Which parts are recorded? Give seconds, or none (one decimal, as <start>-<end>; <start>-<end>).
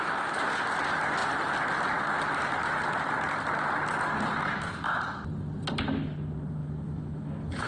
0.0-6.6